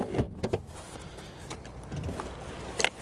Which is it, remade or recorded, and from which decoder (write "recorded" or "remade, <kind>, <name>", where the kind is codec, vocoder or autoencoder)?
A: recorded